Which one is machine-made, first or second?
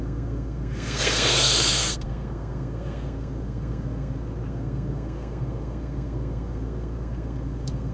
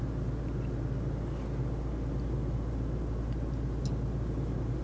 first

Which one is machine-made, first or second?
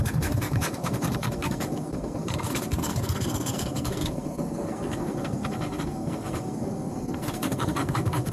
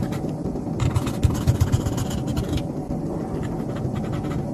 first